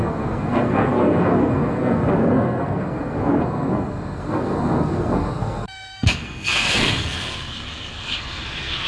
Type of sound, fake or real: fake